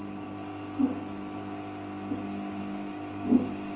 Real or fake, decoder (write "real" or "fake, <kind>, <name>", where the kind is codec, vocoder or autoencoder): real